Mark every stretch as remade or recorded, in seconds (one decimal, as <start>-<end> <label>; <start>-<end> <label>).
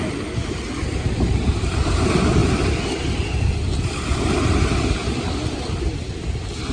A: 0.0-6.7 recorded